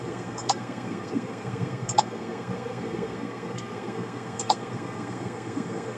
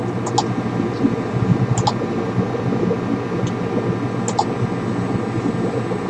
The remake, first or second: first